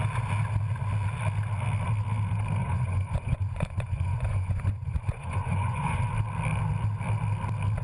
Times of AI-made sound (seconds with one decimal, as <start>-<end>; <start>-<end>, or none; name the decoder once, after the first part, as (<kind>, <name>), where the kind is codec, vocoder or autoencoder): 2.6-6.0 (vocoder, Vocos)